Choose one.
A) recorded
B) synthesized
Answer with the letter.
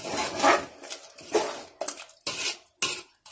A